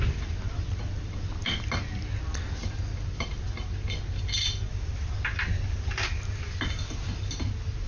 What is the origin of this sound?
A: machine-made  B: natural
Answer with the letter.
B